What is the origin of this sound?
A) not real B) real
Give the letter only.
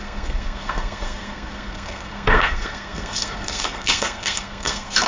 A